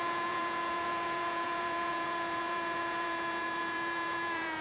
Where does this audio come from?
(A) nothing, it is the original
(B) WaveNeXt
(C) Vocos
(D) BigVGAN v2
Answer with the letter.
C